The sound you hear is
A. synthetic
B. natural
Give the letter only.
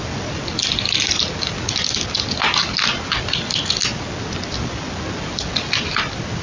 B